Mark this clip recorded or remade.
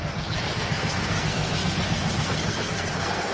remade